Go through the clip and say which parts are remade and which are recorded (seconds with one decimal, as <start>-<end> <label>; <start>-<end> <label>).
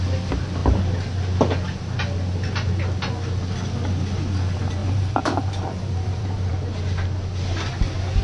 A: 0.0-4.8 recorded; 4.8-6.5 remade; 6.5-8.2 recorded